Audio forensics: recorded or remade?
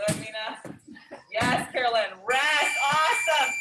recorded